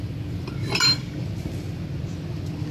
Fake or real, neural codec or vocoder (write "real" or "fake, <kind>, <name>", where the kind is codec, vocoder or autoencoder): real